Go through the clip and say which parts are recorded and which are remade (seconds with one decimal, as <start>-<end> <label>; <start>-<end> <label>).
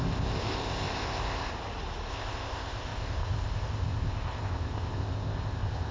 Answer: 0.0-1.5 remade; 1.5-2.1 recorded; 2.1-5.9 remade